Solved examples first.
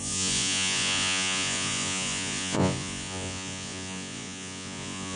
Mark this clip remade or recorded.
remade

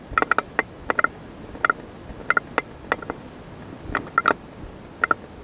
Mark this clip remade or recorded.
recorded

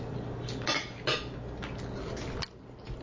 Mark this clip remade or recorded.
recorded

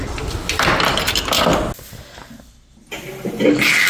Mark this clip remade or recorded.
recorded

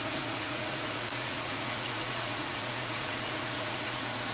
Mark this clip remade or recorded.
remade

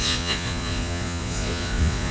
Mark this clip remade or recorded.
remade